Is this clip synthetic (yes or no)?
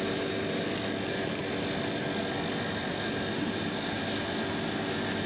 no